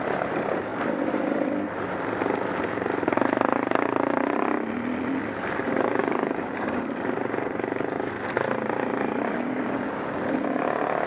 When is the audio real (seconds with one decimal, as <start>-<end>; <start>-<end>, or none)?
0.0-6.0; 7.0-9.3; 10.2-11.1